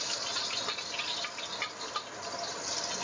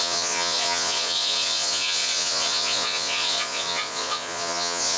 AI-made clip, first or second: second